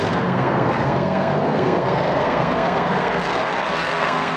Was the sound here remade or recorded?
remade